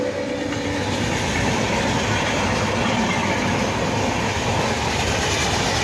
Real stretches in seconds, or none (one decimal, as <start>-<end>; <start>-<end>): 0.0-5.8